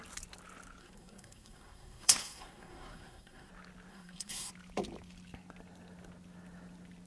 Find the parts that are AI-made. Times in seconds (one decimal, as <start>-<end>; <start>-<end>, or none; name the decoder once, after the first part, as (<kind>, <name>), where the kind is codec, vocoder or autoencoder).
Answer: 0.8-3.5 (codec, SNAC); 3.9-4.5